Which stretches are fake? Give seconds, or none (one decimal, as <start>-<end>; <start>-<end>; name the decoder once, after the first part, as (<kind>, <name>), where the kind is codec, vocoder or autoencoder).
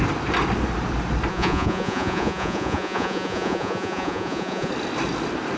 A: 1.3-4.7 (vocoder, Vocos)